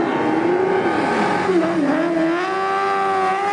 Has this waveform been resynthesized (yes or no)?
no